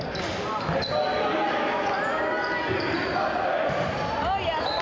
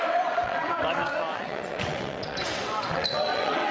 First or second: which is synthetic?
second